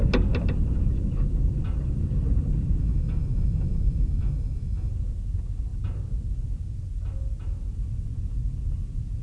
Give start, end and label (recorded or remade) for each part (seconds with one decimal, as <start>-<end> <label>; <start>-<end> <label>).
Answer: 0.0-2.8 recorded; 2.8-4.9 remade; 4.9-9.2 recorded